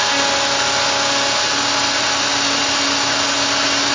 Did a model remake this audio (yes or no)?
no